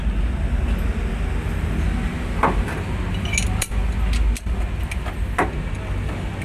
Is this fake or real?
real